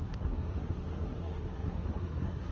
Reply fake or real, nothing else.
fake